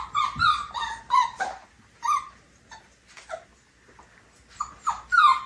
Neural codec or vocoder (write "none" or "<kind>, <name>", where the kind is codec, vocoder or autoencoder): none